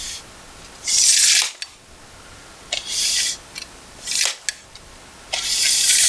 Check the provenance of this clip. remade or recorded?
recorded